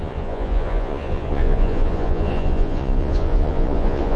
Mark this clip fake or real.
fake